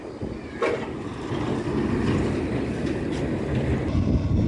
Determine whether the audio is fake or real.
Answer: real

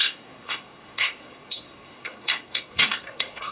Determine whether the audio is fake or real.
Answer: fake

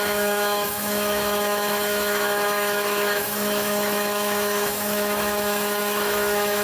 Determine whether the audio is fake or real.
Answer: fake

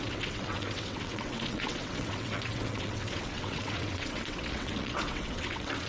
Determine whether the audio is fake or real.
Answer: fake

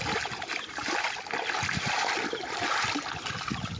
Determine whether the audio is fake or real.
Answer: real